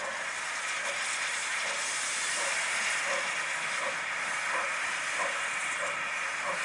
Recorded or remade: recorded